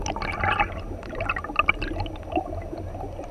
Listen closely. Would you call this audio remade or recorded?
recorded